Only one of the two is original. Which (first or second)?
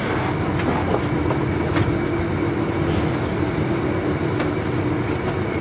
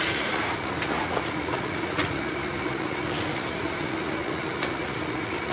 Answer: first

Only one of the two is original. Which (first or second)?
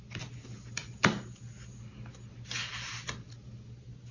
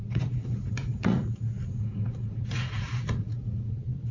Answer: first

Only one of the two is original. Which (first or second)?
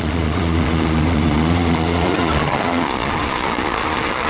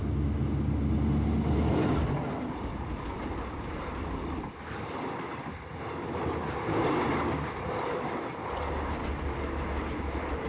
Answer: second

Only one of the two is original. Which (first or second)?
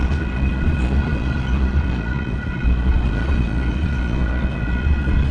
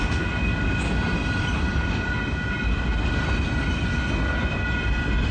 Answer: second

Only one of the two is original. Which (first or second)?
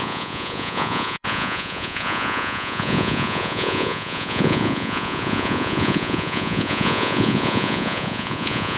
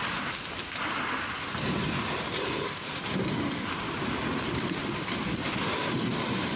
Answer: second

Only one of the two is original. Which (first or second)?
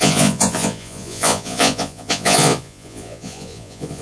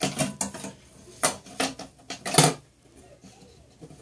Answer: second